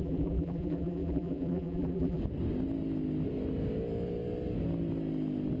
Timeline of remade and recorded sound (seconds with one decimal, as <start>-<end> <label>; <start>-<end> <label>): 0.0-2.2 remade; 2.2-5.6 recorded